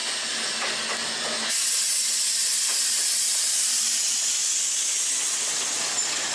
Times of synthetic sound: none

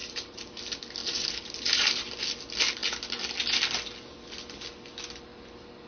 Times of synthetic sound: 0.0-0.6 (vocoder, BigVGAN v2); 1.0-2.2

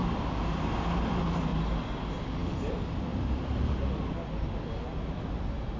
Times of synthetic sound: none

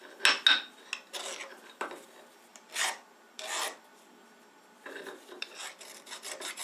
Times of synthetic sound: 2.5-6.6 (vocoder, BigVGAN v2)

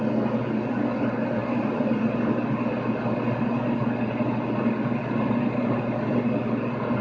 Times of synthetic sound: none

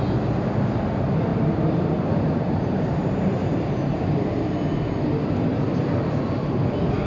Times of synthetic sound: 1.3-4.5 (vocoder, BigVGAN v2)